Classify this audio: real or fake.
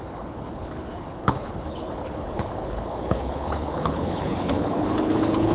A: fake